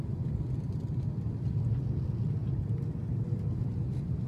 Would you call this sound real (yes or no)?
yes